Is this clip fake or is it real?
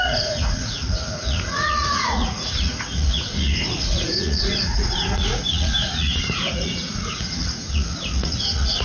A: fake